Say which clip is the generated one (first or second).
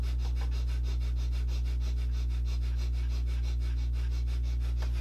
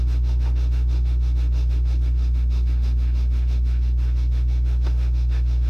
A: second